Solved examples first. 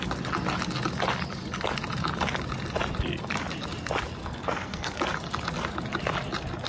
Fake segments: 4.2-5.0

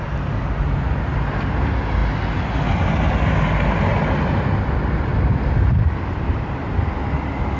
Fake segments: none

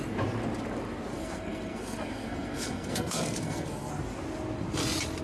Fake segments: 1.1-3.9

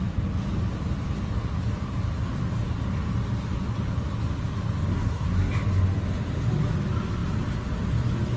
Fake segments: 4.9-5.5

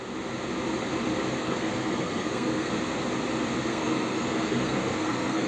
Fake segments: 1.4-2.7; 3.7-5.5

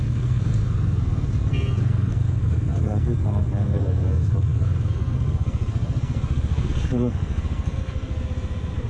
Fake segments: 0.0-8.1